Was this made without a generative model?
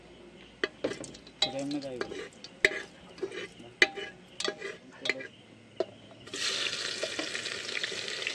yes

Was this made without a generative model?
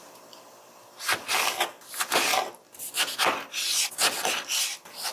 yes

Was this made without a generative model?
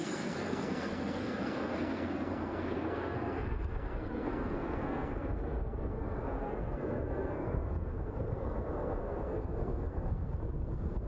no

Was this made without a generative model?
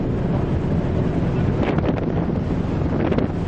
yes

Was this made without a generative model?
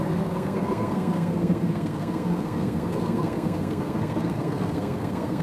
no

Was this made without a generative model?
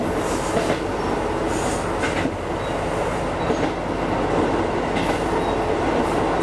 yes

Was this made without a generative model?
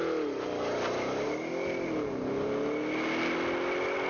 yes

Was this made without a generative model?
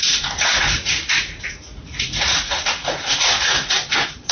no